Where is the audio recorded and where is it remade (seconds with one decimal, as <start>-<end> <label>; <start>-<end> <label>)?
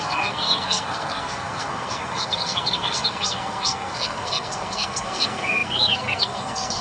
0.0-6.8 remade